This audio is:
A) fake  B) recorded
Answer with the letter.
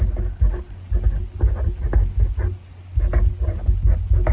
B